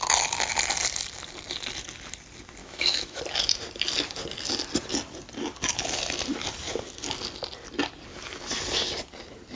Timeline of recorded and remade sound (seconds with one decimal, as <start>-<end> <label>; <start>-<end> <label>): 0.0-2.6 recorded; 2.6-3.2 remade; 3.2-9.6 recorded